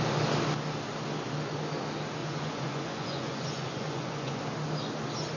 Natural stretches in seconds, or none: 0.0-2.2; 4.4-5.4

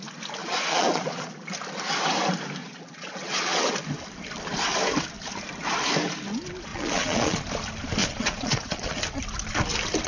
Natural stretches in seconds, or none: 0.0-0.4; 1.3-2.6; 3.7-6.7; 7.4-8.0; 9.0-10.1

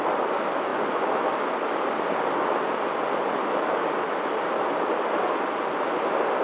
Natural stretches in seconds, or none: 0.0-6.4

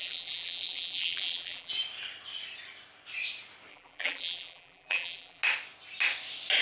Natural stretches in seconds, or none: 1.7-3.7; 5.4-6.6

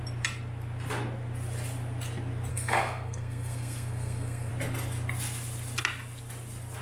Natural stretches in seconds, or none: 0.0-2.5; 4.5-6.8

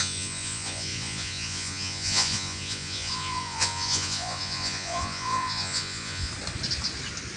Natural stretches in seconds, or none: 6.3-7.4

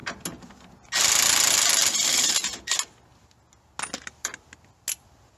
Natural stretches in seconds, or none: 0.0-5.4